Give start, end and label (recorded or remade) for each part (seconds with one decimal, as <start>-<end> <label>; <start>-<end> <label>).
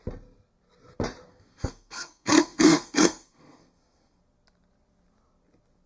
0.0-1.3 recorded; 1.3-4.2 remade; 4.2-5.9 recorded